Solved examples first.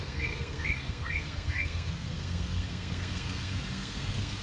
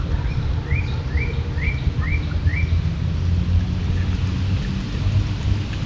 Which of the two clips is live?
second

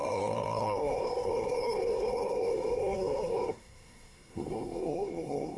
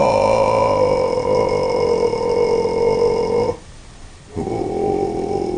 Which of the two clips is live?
second